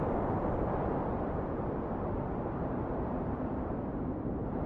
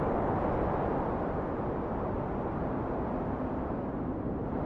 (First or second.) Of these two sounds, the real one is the second